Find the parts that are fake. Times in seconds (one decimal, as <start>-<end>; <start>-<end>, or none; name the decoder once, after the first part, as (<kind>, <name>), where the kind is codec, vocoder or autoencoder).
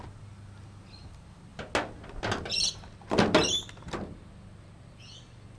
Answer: none